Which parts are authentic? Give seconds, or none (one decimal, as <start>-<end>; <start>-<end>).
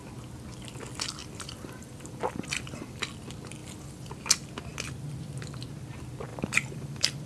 0.0-1.2; 3.0-3.6; 4.1-6.3